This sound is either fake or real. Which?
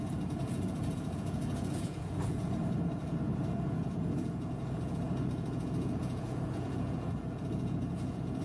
fake